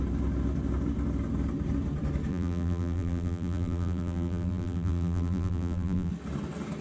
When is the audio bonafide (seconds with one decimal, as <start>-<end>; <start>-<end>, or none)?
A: 0.0-2.3; 6.1-6.8